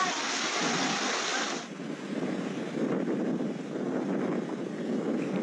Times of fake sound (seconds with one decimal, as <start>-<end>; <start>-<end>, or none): none